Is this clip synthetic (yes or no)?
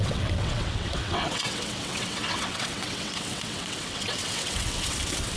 yes